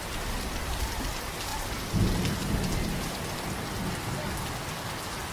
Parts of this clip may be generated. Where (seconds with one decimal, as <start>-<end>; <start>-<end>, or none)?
none